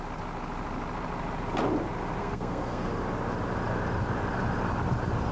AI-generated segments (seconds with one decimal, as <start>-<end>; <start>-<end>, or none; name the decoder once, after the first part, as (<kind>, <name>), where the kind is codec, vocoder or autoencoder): 2.2-2.9 (codec, SNAC)